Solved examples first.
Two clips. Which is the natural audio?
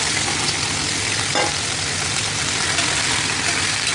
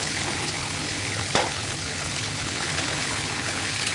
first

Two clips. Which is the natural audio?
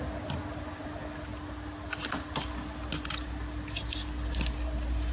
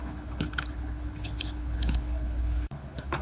first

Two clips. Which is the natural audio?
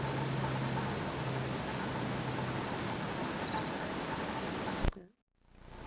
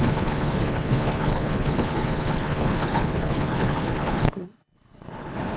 first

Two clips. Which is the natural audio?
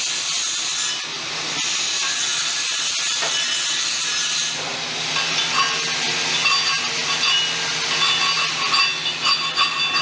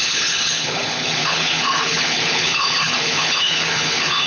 first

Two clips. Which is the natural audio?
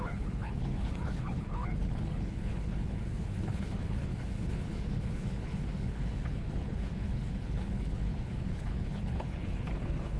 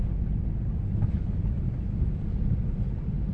second